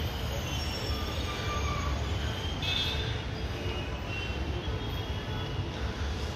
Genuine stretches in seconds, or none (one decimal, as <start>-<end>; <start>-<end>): 0.0-1.0; 3.2-4.3; 4.8-6.4